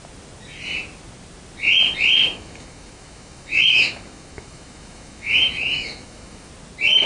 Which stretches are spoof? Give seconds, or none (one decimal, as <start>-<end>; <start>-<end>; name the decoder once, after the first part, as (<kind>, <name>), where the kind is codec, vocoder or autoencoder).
2.2-6.5 (autoencoder, DAC-VAE)